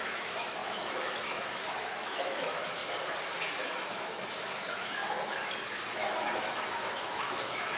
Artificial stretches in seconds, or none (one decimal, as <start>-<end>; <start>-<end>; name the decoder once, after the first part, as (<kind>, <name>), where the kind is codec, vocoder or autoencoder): 0.0-2.8 (autoencoder, DAC-VAE); 3.4-5.0; 5.9-7.8